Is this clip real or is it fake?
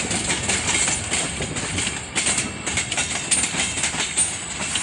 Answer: real